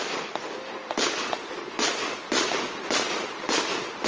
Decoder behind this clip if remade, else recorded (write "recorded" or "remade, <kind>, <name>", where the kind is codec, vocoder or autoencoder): recorded